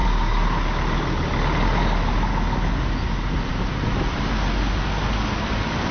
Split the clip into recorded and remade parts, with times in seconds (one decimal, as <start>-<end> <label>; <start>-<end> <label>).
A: 0.0-5.9 recorded